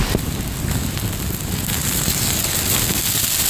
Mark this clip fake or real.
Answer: real